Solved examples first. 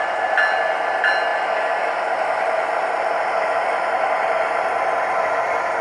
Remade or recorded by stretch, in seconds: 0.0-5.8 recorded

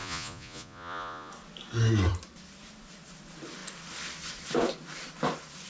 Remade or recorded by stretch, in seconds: 0.0-1.3 remade; 1.3-5.7 recorded

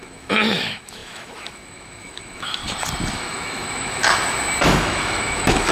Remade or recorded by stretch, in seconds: 0.0-2.6 remade; 2.6-3.1 recorded; 3.1-4.0 remade; 4.0-4.6 recorded; 4.6-5.7 remade

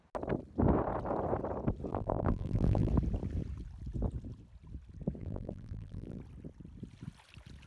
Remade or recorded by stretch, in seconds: 0.0-1.9 recorded; 1.9-2.9 remade; 2.9-5.2 recorded; 5.2-6.2 remade; 6.2-7.7 recorded